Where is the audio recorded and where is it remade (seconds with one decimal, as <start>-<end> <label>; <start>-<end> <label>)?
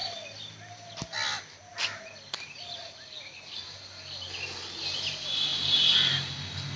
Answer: 0.0-6.8 recorded